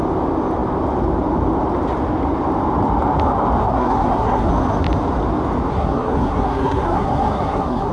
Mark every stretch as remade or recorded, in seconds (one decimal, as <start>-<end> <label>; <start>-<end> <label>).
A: 0.0-3.6 recorded; 3.6-4.5 remade; 4.5-5.7 recorded; 5.7-7.9 remade